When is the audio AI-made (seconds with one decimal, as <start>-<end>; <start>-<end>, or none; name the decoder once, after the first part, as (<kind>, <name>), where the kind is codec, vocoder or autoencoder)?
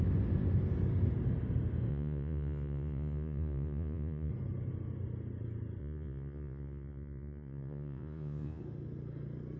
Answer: 1.9-4.3 (vocoder, Vocos); 5.8-8.6